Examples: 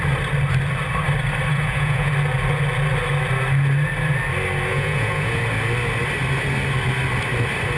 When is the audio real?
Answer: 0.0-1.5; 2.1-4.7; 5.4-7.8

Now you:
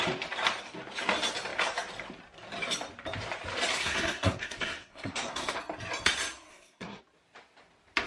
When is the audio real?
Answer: 0.0-3.7; 5.6-6.5; 7.0-8.1

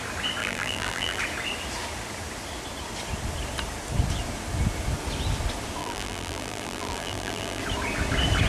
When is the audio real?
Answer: 0.0-0.4; 1.2-5.8; 7.6-8.5